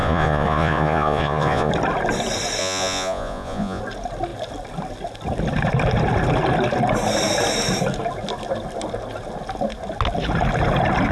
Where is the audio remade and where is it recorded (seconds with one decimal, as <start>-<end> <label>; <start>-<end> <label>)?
0.0-1.7 remade; 1.7-2.6 recorded; 2.6-3.8 remade; 3.8-11.1 recorded